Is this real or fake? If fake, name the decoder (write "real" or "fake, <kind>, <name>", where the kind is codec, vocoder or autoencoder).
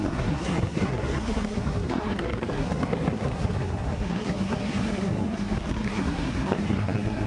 fake, codec, SNAC